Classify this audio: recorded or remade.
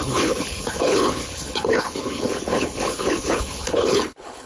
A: remade